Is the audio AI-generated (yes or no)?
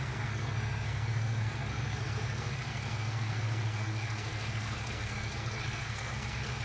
yes